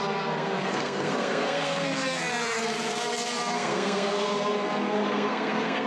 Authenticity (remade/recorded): remade